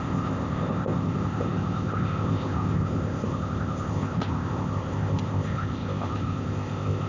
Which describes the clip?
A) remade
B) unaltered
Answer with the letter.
A